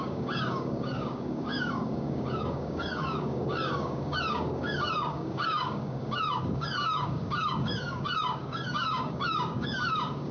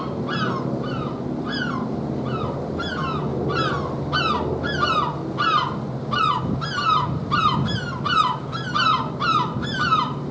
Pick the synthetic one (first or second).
first